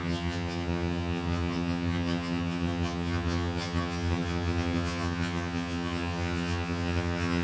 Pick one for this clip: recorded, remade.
remade